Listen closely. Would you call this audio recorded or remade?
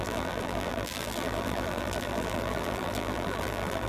remade